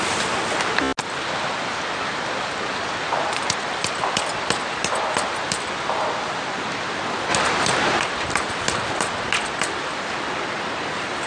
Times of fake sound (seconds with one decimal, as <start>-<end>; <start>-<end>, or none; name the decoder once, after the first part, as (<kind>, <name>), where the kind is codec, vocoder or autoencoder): 7.3-8.0 (vocoder, BigVGAN v2)